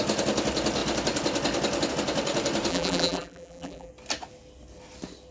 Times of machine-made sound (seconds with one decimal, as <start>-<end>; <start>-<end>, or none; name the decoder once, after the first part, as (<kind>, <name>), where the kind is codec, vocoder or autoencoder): 2.7-3.9 (vocoder, BigVGAN v2)

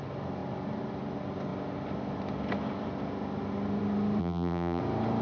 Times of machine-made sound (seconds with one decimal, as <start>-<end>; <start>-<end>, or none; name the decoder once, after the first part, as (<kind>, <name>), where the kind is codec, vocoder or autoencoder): 4.2-4.8 (vocoder, BigVGAN v2)